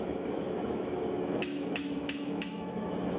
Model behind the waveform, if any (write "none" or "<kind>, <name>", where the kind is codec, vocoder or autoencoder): autoencoder, DAC-VAE